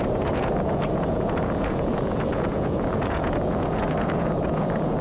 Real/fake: fake